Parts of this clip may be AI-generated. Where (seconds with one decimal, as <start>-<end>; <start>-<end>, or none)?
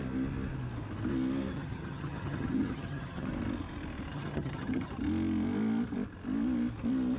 1.5-3.3; 4.1-4.9